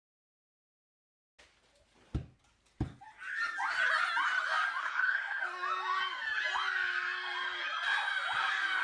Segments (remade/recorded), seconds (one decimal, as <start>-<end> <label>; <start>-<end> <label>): 0.0-4.8 recorded; 4.8-5.4 remade; 5.4-8.8 recorded